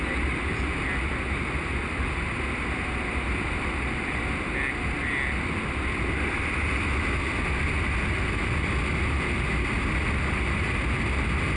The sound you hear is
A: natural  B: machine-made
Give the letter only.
A